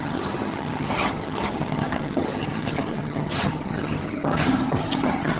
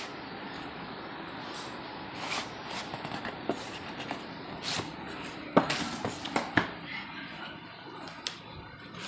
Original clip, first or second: second